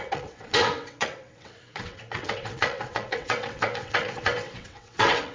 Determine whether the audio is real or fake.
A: fake